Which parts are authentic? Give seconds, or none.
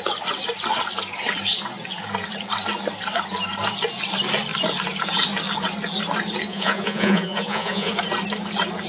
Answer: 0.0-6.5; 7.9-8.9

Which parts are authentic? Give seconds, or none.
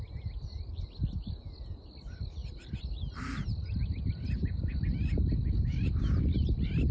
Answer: 0.0-6.9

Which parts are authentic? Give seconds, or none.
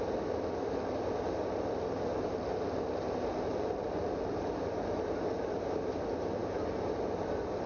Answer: 0.0-7.7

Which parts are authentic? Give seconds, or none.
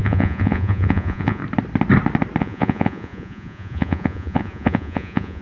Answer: 1.4-2.4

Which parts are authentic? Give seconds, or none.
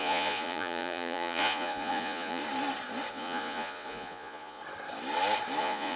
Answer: 2.4-3.1; 4.6-5.6